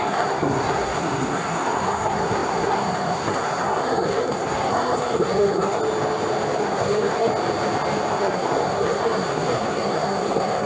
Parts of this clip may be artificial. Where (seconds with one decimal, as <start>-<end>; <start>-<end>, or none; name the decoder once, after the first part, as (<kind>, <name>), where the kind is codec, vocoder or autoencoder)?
0.0-5.8 (codec, SNAC); 6.6-7.3; 8.1-10.7